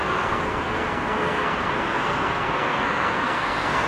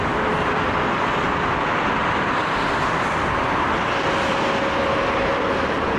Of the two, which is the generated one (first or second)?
first